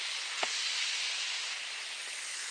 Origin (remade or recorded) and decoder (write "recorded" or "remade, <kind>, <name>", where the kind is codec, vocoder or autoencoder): recorded